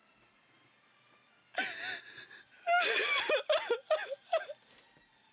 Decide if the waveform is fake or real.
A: real